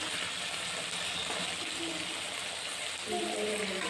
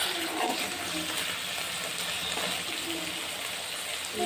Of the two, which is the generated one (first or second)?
first